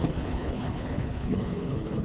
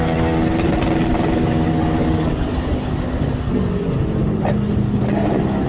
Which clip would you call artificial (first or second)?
first